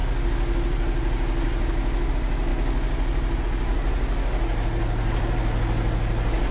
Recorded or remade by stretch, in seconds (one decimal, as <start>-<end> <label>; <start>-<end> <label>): 0.0-6.5 recorded